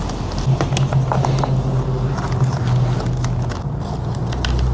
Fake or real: real